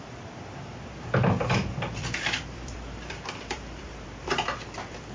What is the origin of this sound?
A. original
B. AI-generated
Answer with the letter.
B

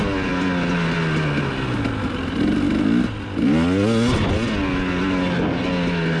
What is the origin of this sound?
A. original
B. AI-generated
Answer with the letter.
A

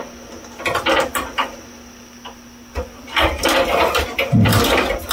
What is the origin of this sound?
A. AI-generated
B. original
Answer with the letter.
B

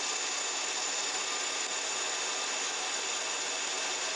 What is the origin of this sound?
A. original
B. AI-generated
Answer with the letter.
A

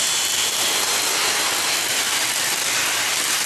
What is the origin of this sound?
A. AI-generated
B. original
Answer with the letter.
B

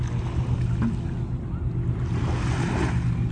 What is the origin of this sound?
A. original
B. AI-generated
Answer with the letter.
A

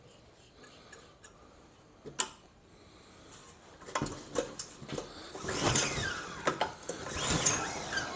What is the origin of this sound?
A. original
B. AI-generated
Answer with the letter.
A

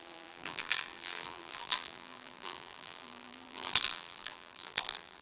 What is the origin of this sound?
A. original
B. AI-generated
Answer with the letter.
B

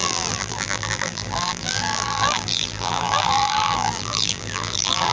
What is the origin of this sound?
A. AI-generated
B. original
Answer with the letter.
A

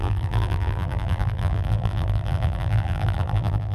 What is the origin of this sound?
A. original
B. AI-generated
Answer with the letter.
B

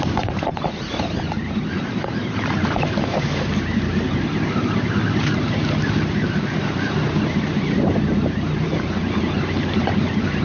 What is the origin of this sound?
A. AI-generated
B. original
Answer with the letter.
A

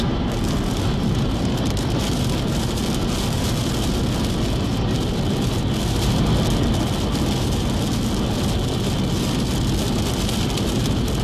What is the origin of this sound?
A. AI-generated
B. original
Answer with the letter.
B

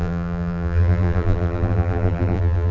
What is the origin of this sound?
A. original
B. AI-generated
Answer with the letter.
B